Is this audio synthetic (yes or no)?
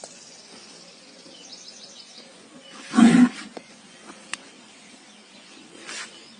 yes